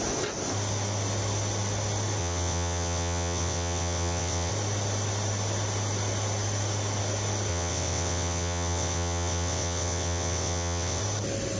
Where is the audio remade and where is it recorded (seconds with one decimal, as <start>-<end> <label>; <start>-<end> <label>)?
0.0-2.2 recorded; 2.2-4.5 remade; 4.5-7.5 recorded; 7.5-11.0 remade; 11.0-11.6 recorded